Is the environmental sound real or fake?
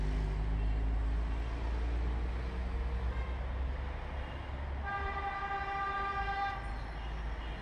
real